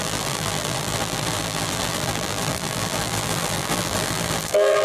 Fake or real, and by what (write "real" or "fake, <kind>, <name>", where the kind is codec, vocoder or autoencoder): fake, vocoder, BigVGAN v2